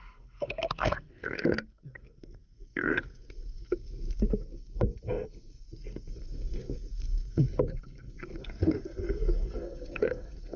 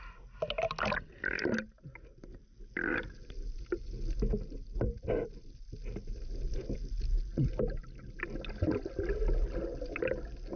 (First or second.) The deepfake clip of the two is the first